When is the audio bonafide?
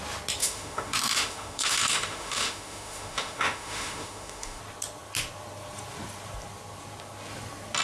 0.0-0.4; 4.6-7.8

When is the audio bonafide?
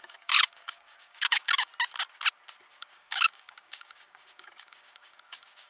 1.7-2.7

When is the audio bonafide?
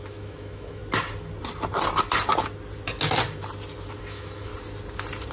0.8-4.0; 4.5-5.3